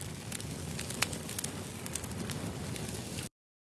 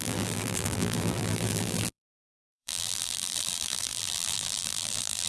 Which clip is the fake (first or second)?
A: second